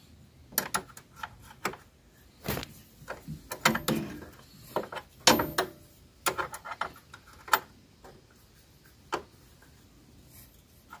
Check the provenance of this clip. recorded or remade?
recorded